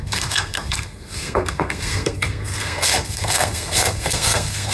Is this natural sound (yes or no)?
no